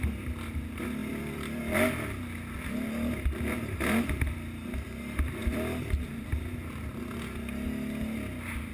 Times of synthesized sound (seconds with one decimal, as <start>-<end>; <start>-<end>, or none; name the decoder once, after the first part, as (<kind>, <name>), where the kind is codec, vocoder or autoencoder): 1.0-1.6 (vocoder, BigVGAN v2); 5.4-6.9